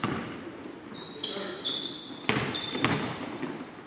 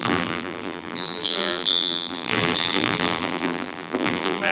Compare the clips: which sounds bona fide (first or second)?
first